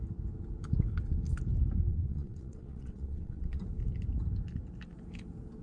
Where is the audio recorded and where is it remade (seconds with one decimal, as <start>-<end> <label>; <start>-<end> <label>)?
0.0-1.9 recorded; 1.9-3.6 remade; 3.6-5.6 recorded